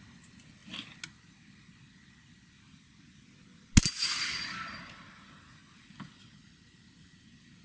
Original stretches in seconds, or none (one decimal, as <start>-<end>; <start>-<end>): 0.0-7.6